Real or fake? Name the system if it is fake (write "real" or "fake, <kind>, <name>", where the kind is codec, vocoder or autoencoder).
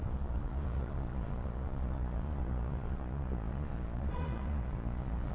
fake, vocoder, Vocos